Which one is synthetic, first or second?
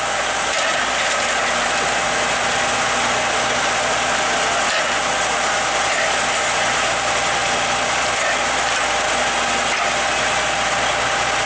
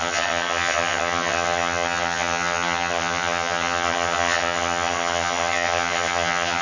second